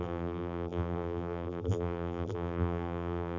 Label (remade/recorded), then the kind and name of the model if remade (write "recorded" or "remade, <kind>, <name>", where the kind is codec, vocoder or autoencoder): remade, vocoder, BigVGAN v2